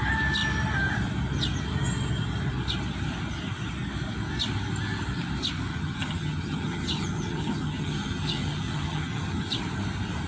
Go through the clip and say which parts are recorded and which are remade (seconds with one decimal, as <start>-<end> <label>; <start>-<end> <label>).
0.0-5.7 recorded; 5.7-9.5 remade; 9.5-10.3 recorded

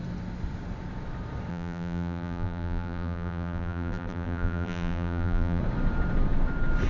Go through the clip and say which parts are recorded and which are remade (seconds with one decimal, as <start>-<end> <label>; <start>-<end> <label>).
0.0-1.5 recorded; 1.5-5.6 remade; 5.6-6.9 recorded

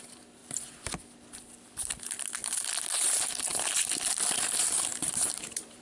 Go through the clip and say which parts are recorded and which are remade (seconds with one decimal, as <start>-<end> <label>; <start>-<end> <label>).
0.0-0.4 remade; 0.4-3.0 recorded; 3.0-5.8 remade

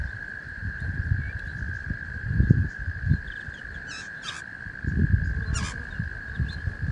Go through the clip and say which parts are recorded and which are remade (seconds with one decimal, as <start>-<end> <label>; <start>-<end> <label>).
0.0-6.9 recorded

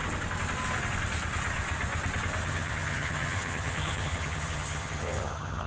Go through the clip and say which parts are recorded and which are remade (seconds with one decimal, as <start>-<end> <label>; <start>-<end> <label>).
0.0-2.4 recorded; 2.4-5.7 remade

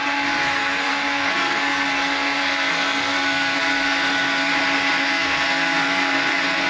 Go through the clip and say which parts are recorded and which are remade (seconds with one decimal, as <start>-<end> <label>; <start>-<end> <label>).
0.0-4.5 remade; 4.5-5.0 recorded; 5.0-6.7 remade